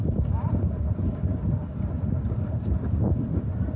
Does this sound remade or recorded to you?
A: remade